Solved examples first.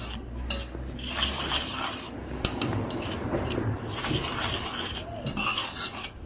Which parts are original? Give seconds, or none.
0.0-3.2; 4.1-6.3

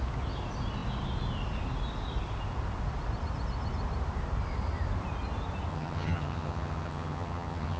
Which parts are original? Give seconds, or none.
0.0-5.7